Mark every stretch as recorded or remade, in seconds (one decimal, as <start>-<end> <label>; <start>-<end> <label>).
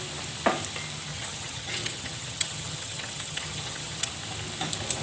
0.0-1.1 recorded; 1.1-4.1 remade; 4.1-5.0 recorded